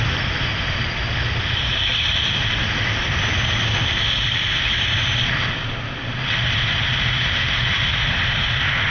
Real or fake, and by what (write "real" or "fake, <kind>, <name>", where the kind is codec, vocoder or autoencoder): real